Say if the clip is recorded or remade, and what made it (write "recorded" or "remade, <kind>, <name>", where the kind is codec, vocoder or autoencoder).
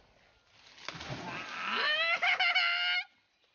recorded